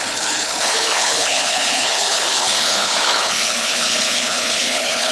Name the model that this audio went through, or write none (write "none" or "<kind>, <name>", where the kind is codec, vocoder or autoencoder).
codec, HILCodec